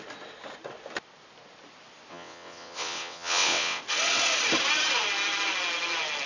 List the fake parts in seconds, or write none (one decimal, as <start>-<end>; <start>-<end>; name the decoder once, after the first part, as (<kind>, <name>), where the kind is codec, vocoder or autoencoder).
2.1-3.8 (vocoder, WaveNeXt)